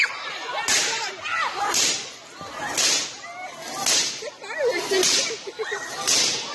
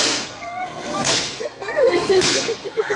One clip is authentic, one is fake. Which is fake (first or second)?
second